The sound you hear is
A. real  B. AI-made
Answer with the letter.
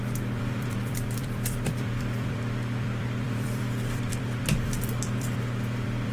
B